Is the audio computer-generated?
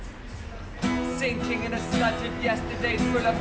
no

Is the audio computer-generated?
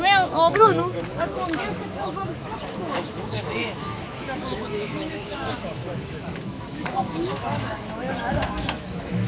yes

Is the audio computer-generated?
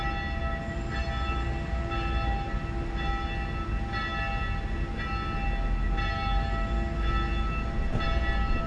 no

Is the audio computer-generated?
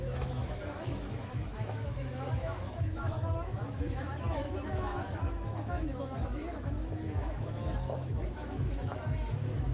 yes